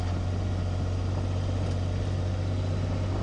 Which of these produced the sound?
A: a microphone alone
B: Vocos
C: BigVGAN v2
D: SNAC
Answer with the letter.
A